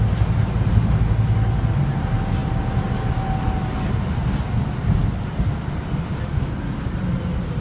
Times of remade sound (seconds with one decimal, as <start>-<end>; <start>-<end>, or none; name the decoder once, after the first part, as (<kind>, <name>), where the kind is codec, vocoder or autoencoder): none